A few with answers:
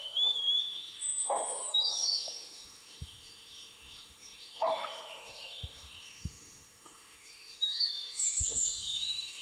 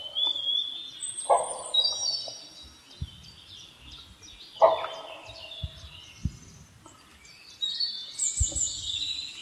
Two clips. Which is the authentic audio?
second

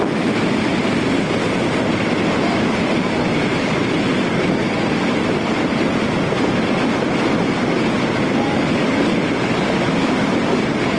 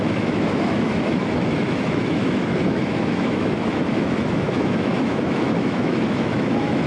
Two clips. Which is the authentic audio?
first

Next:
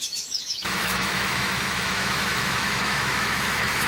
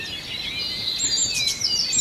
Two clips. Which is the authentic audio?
second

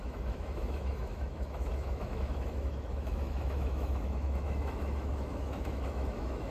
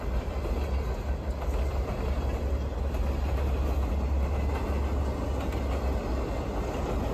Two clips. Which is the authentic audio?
second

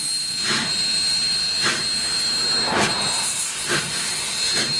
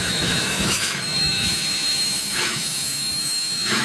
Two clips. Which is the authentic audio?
first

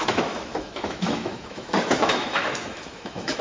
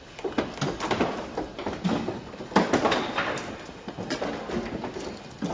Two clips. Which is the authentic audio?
second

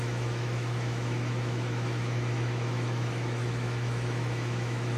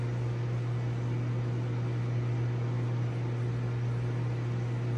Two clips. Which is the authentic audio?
second